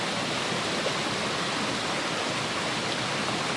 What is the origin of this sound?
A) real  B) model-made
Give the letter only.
A